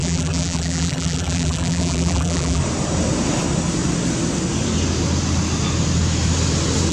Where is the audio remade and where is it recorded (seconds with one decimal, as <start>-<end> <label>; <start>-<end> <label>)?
0.0-2.6 remade; 2.6-6.9 recorded